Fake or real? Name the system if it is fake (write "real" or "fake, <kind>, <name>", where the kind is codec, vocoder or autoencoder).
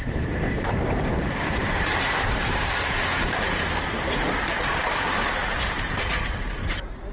fake, vocoder, BigVGAN v2